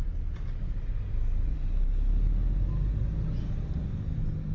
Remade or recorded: recorded